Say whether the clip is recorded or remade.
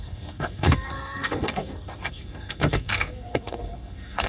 remade